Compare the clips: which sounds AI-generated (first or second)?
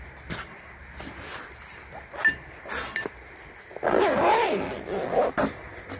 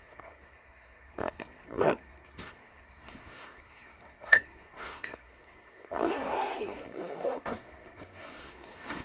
second